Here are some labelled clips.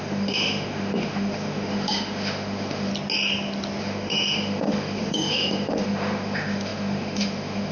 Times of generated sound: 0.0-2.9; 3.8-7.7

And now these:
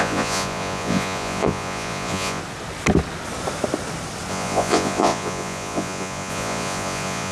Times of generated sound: 0.0-2.4; 4.3-7.3

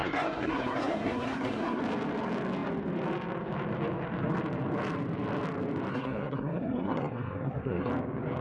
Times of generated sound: 0.0-1.8; 5.9-7.9

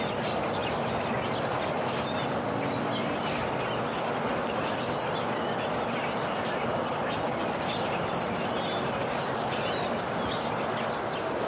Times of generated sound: 0.6-4.8; 6.7-10.4